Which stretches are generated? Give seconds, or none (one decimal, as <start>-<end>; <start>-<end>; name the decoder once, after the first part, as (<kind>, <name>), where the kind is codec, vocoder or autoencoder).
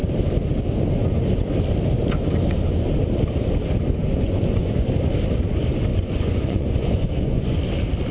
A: 4.0-4.9 (vocoder, Vocos); 5.9-7.6